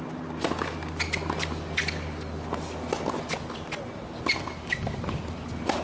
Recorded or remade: recorded